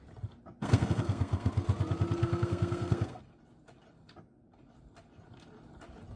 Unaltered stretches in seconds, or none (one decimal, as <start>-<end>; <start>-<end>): 0.0-0.6; 1.5-2.2; 3.2-6.2